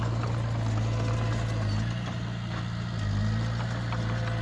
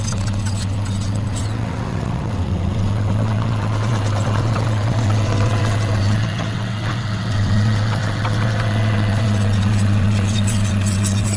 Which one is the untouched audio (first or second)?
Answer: first